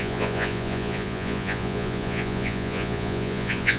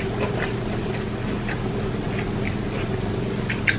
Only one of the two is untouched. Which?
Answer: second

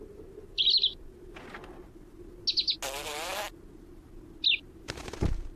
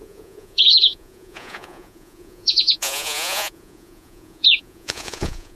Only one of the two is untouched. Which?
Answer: first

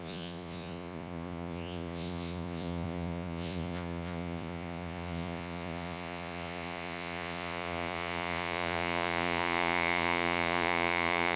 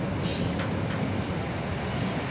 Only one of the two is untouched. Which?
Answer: second